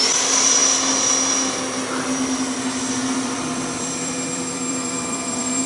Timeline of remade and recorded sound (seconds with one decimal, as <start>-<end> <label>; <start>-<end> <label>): 0.0-0.6 remade; 0.6-2.9 recorded; 2.9-5.7 remade